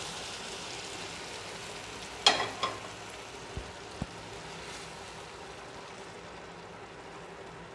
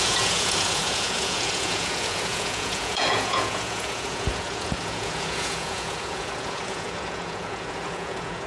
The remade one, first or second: second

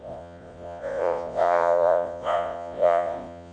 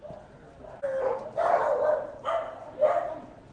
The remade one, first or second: first